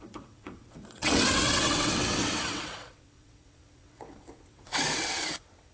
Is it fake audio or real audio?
fake